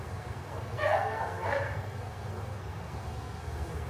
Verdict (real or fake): fake